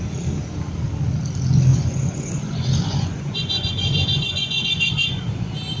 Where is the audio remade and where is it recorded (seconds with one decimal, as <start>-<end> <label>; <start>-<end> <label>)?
0.0-1.7 recorded; 1.7-5.2 remade; 5.2-5.8 recorded